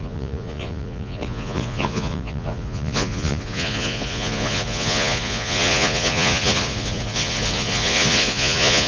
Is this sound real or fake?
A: fake